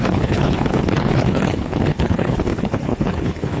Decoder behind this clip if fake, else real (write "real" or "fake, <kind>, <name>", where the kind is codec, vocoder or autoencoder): fake, codec, HILCodec